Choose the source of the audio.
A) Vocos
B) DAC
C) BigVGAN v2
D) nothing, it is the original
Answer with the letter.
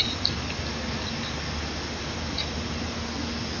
D